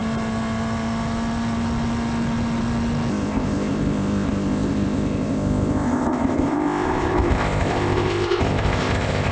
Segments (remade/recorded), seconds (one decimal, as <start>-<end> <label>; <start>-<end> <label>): 0.0-3.1 recorded; 3.1-9.3 remade